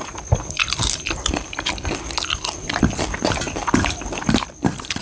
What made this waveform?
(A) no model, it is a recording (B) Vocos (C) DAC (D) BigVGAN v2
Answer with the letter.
A